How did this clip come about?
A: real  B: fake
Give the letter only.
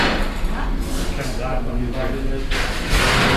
A